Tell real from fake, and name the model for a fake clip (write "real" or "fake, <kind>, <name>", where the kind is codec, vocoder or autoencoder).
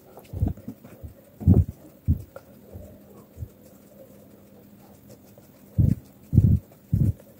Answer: real